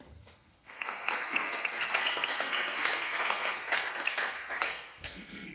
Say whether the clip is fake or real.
fake